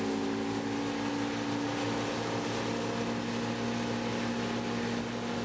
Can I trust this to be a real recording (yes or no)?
yes